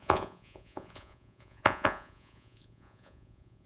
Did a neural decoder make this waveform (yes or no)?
yes